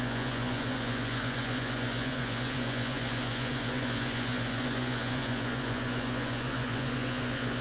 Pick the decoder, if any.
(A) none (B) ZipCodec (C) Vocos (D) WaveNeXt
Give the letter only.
C